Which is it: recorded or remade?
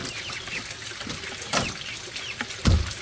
recorded